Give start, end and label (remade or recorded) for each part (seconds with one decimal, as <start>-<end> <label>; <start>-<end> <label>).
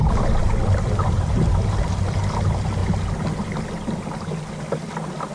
0.0-5.3 recorded